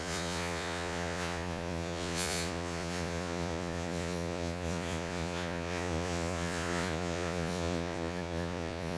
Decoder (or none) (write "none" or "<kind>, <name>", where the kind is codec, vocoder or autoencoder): vocoder, Vocos